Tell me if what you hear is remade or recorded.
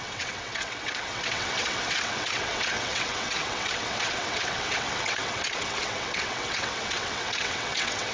remade